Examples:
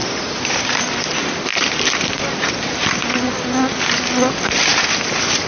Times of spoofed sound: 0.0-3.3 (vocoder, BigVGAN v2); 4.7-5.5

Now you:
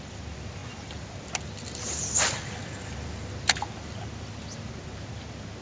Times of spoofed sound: none